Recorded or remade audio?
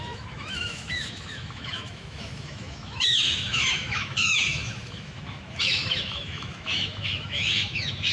remade